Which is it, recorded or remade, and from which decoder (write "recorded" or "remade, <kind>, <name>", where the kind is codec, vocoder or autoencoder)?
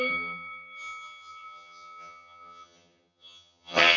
remade, vocoder, HiFi-GAN